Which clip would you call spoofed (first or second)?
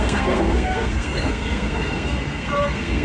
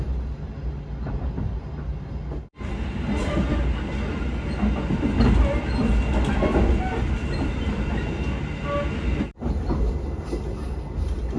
first